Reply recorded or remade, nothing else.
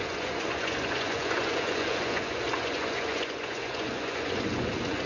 remade